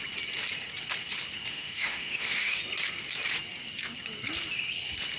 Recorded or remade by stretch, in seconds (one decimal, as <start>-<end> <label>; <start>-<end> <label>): 0.0-1.5 recorded; 1.5-2.6 remade; 2.6-5.2 recorded